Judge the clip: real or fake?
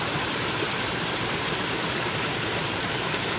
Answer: fake